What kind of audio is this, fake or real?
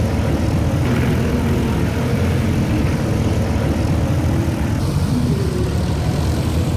real